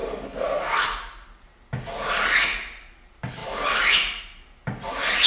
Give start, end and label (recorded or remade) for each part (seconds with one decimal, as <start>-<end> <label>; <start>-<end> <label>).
0.0-3.4 recorded; 3.4-4.2 remade; 4.2-5.3 recorded